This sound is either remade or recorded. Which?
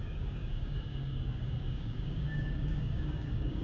remade